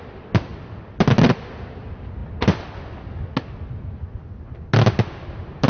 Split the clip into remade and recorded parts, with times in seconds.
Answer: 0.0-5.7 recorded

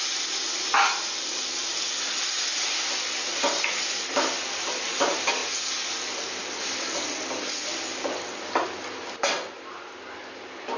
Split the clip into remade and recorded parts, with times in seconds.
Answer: 0.0-10.8 recorded

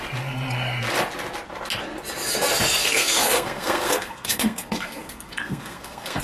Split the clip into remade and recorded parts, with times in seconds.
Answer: 0.0-2.8 recorded; 2.8-6.2 remade

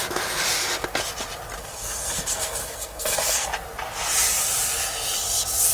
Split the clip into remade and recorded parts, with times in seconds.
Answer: 0.0-1.6 recorded; 1.6-3.5 remade; 3.5-5.7 recorded